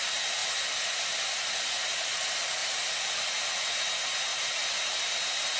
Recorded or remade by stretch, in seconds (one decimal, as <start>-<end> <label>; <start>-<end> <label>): 0.0-2.6 recorded; 2.6-3.8 remade; 3.8-4.3 recorded; 4.3-5.0 remade; 5.0-5.6 recorded